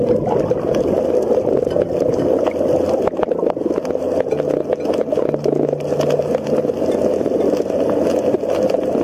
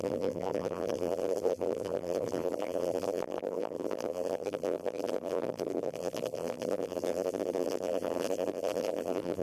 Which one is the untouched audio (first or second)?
first